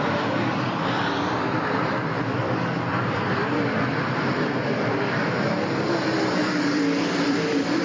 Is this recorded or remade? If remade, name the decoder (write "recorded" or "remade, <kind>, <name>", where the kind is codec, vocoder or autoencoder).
remade, vocoder, BigVGAN v2